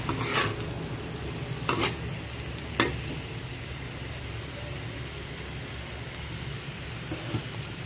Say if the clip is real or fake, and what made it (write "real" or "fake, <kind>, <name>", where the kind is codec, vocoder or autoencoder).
real